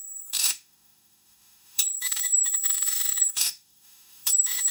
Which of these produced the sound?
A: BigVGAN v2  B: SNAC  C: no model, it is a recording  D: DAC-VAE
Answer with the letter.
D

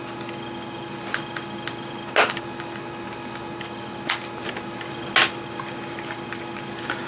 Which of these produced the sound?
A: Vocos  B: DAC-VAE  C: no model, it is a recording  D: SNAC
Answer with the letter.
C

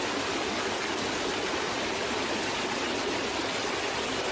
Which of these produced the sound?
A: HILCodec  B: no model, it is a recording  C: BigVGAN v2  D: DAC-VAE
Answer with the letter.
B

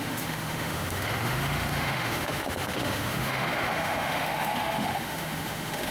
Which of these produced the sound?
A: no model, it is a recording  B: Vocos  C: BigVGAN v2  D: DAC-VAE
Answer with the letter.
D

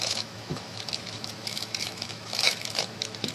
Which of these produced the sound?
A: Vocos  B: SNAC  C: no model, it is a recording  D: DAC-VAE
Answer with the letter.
D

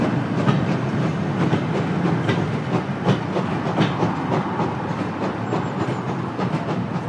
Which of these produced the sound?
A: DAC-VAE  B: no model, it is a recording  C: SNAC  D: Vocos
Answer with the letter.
B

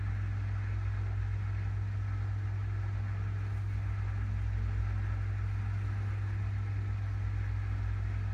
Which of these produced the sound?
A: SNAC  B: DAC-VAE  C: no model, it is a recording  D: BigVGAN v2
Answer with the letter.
C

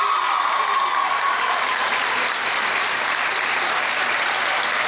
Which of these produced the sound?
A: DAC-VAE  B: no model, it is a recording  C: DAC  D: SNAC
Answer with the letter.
B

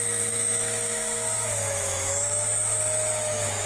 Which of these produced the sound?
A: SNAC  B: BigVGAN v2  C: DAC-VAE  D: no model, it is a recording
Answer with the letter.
C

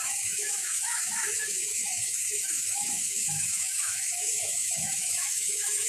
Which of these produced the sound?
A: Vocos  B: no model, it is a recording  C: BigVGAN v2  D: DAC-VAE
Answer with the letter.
D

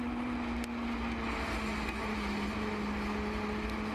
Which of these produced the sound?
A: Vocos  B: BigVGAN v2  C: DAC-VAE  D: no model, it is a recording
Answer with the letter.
D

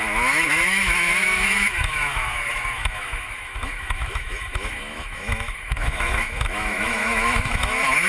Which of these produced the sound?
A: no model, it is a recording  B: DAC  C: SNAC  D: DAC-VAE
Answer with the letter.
D